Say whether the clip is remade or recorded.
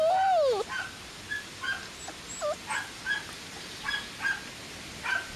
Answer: recorded